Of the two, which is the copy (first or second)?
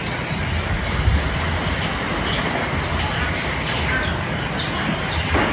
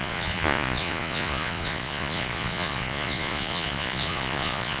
second